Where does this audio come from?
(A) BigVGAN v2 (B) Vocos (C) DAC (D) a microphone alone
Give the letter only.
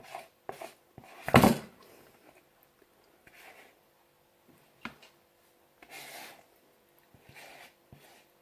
D